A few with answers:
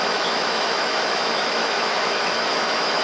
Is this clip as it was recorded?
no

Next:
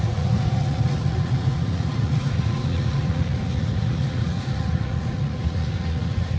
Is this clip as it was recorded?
no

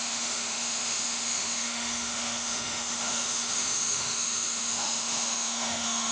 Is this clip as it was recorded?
no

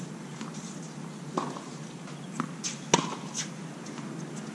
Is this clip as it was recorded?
yes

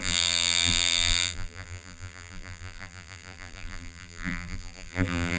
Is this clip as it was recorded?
no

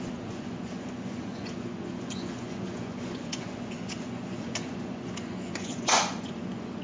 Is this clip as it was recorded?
no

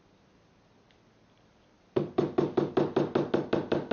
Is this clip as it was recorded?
yes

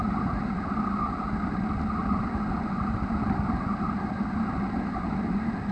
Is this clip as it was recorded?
yes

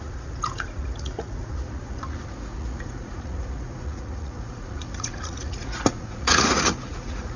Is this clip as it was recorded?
no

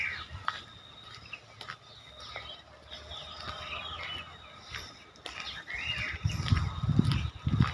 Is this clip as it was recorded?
yes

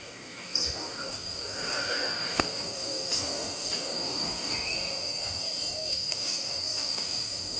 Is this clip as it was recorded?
no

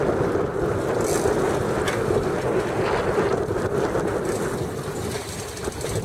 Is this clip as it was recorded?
yes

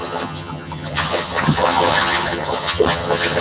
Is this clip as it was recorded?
no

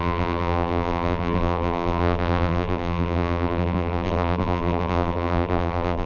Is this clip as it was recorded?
no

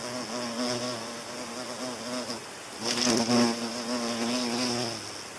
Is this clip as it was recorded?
yes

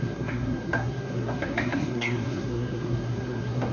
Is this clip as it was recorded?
no